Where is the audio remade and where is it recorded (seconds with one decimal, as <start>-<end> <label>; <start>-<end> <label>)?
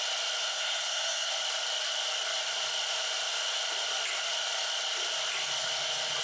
0.0-0.5 recorded; 0.5-1.3 remade; 1.3-6.2 recorded